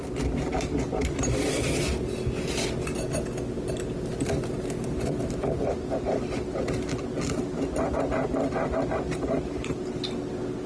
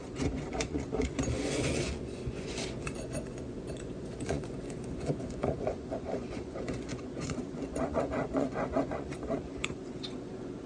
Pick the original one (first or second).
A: first